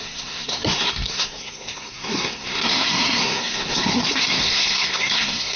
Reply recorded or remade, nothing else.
remade